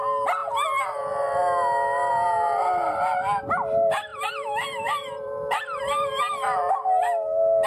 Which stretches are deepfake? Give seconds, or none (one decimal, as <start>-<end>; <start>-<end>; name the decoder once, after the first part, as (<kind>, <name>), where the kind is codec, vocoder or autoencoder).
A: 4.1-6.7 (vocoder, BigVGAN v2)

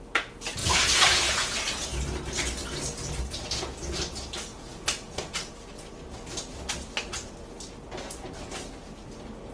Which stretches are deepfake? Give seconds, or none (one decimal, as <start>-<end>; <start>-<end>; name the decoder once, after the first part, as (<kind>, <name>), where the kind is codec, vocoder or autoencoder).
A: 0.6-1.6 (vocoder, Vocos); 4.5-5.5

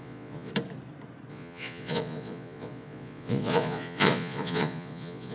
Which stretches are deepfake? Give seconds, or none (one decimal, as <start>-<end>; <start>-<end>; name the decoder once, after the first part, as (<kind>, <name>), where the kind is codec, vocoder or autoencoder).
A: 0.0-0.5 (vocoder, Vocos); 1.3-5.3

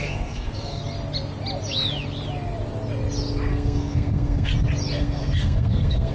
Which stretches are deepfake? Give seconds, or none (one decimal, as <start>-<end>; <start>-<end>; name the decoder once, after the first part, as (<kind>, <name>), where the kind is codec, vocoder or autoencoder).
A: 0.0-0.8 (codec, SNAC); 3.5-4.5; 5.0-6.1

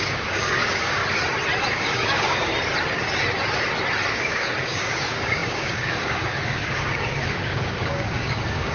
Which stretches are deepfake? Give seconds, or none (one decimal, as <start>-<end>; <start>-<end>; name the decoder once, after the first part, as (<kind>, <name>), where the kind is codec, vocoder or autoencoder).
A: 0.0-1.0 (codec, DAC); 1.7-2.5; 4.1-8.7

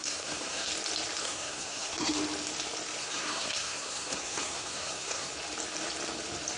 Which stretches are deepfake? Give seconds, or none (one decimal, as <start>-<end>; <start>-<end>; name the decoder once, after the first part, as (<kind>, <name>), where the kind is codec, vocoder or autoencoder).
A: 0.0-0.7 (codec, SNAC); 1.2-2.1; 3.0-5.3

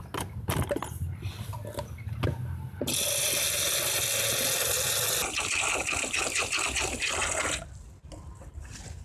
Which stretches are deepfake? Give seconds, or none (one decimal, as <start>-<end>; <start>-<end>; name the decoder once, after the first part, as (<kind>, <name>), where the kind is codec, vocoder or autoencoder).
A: 5.2-7.2 (vocoder, BigVGAN v2)